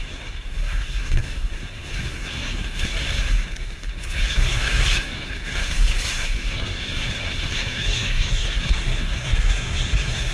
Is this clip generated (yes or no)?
yes